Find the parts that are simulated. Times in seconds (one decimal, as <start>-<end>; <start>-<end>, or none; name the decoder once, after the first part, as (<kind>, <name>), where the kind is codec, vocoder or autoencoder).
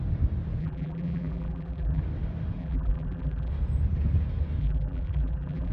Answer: 0.6-2.0 (vocoder, BigVGAN v2); 2.6-3.5; 4.6-5.7